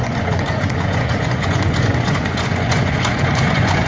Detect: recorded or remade remade